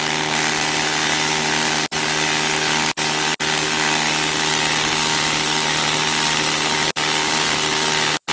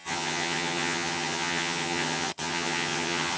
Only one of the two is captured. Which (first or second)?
first